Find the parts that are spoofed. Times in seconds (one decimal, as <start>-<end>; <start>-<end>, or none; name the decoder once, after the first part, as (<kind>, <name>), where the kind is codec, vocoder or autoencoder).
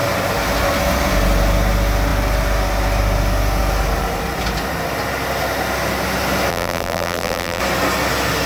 6.5-7.6 (vocoder, BigVGAN v2)